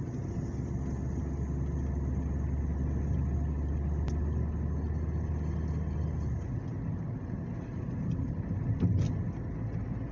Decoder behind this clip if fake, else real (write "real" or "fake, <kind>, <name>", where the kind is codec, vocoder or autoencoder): real